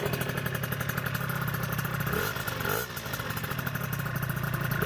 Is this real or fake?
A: real